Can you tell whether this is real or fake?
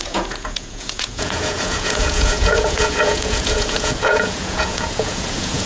fake